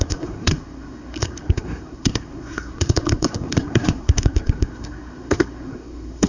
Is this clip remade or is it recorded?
remade